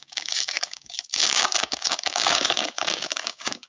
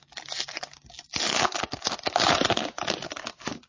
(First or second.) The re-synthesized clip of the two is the first